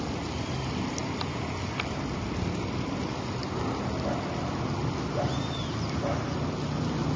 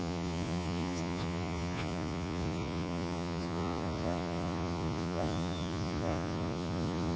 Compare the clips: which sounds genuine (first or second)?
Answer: first